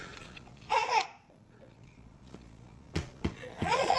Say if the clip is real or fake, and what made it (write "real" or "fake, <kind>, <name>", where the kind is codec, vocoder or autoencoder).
fake, vocoder, Vocos